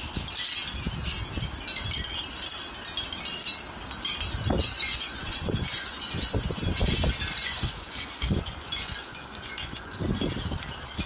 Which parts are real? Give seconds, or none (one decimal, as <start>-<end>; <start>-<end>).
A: 0.0-4.6; 6.7-7.4; 10.3-11.1